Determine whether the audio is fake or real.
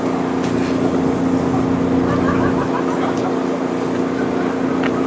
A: real